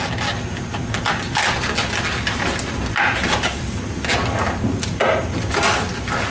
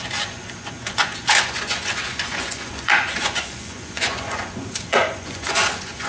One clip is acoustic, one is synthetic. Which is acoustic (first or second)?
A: first